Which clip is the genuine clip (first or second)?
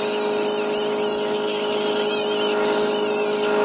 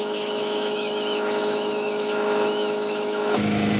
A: first